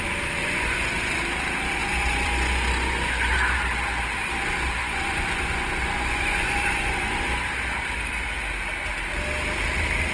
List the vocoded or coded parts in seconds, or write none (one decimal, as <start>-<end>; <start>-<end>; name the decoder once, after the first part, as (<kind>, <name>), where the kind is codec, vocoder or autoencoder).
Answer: 0.4-1.2 (vocoder, Vocos); 1.8-3.3; 4.8-7.2